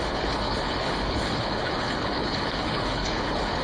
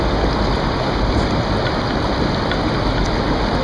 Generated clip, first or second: first